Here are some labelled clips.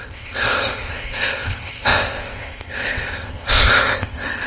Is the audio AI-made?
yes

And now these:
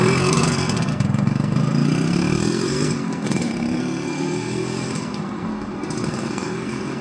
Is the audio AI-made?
yes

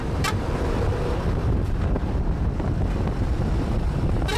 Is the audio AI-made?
yes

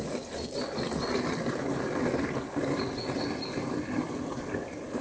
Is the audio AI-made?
no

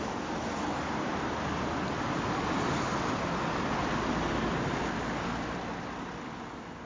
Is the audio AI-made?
no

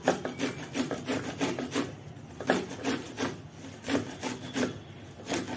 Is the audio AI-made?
no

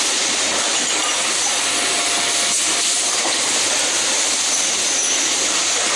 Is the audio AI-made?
no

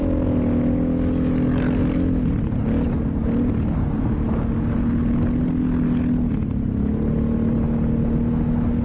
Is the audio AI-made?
no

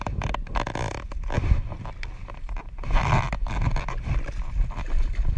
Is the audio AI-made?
no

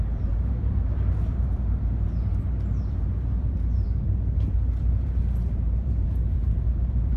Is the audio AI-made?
yes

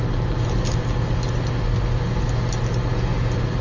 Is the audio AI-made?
no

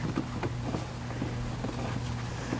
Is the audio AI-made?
no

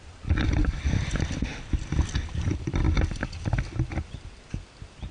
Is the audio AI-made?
no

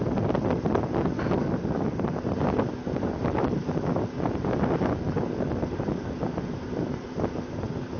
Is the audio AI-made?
no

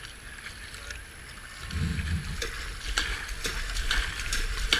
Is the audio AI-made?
no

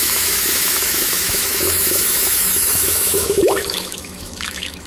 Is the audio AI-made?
yes